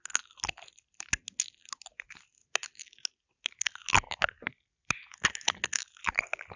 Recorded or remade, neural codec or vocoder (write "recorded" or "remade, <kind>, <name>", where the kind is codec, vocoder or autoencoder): recorded